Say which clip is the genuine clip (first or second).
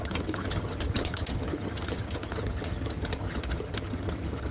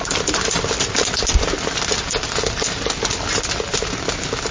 second